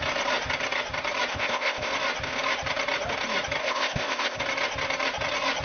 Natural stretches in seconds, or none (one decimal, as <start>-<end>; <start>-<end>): 0.0-1.3; 1.9-3.6; 4.4-5.6